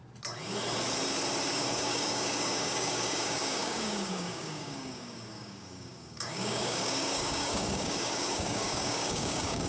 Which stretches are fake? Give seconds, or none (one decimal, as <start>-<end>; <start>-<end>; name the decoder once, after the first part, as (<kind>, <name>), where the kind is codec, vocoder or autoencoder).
1.5-9.7 (codec, DAC)